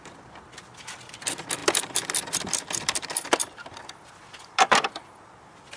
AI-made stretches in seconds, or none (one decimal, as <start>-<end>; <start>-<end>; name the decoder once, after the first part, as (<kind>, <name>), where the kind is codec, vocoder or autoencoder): 1.6-5.1 (vocoder, BigVGAN v2)